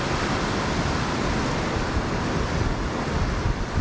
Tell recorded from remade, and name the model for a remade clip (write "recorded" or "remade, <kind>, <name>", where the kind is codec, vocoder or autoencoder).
recorded